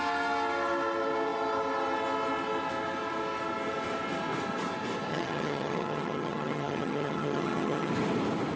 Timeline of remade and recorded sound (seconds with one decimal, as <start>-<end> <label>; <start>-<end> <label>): 0.0-5.1 recorded; 5.1-7.9 remade; 7.9-8.6 recorded